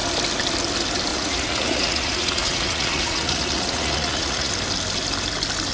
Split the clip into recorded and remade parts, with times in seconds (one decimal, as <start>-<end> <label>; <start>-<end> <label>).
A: 0.0-1.1 recorded; 1.1-4.5 remade; 4.5-5.7 recorded